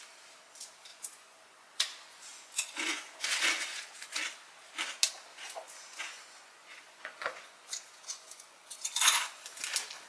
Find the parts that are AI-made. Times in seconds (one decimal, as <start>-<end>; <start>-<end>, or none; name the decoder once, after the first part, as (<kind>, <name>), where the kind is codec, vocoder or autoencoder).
0.9-4.2 (vocoder, Vocos); 5.3-9.4